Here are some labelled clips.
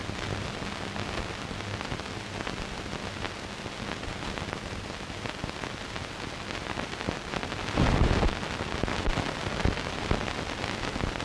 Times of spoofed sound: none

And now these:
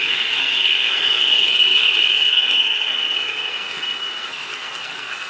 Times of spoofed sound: 0.0-5.3 (codec, SNAC)

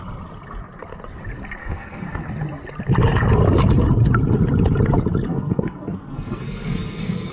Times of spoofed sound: 1.6-2.2 (codec, SNAC); 5.3-7.3

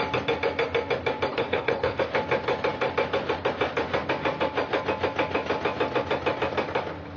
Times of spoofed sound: 1.3-2.0 (codec, HILCodec)

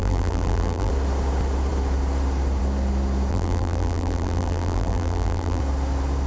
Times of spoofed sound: 0.0-0.9 (vocoder, BigVGAN v2); 3.3-5.6

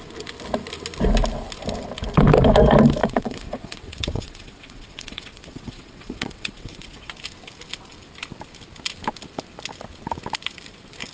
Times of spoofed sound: 3.0-7.1 (vocoder, WaveNeXt)